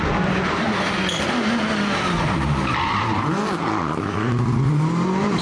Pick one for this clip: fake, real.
real